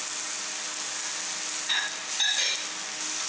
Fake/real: real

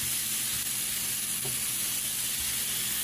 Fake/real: real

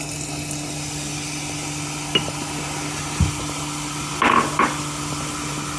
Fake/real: real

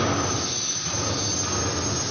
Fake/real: real